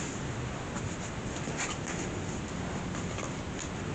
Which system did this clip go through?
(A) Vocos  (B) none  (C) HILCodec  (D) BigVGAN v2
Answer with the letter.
B